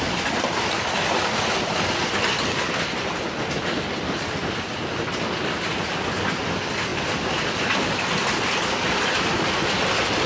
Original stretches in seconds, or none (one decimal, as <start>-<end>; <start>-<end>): 0.0-10.3